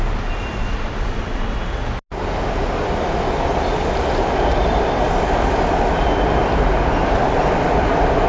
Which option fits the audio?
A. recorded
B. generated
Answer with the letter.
A